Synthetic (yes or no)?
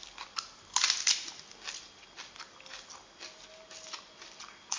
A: no